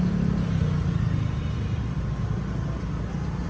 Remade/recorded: recorded